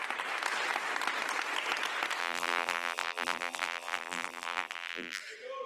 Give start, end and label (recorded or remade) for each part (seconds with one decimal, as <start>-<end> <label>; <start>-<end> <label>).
0.0-2.2 recorded; 2.2-5.2 remade; 5.2-5.7 recorded

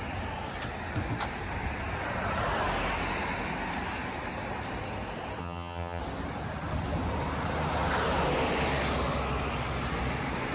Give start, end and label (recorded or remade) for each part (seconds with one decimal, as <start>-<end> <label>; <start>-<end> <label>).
0.0-5.4 recorded; 5.4-6.0 remade; 6.0-10.5 recorded

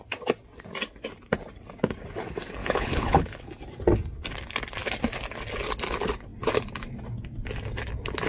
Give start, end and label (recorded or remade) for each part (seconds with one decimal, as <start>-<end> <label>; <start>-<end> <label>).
0.0-2.6 recorded; 2.6-3.5 remade; 3.5-8.3 recorded

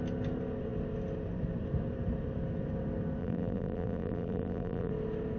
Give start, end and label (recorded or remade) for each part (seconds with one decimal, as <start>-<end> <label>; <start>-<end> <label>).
0.0-3.2 recorded; 3.2-4.9 remade; 4.9-5.4 recorded

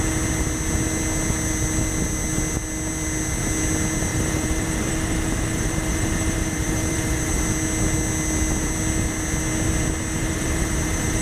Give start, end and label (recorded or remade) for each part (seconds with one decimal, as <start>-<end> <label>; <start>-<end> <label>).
0.0-4.1 recorded; 4.1-7.4 remade; 7.4-10.2 recorded; 10.2-11.2 remade

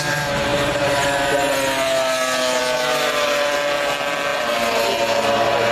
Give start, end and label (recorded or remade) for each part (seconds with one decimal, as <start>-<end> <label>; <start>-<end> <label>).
0.0-5.7 recorded